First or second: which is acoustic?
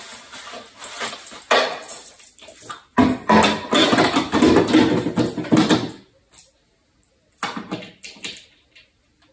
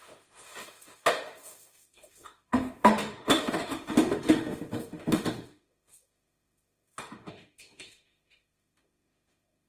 first